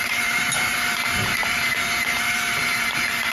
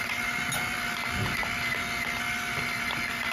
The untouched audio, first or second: second